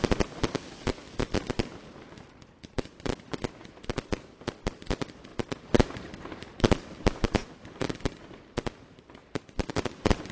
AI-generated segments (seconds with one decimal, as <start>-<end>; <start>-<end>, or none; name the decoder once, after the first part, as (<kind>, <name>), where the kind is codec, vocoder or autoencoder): 5.3-7.9 (vocoder, BigVGAN v2); 9.2-9.7